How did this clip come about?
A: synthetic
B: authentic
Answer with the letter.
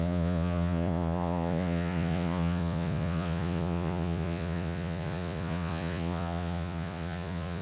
A